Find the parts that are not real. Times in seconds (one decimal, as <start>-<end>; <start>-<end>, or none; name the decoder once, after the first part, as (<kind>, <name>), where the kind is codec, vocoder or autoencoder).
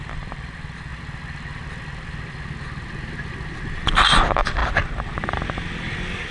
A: 0.0-0.9 (vocoder, BigVGAN v2); 4.0-6.3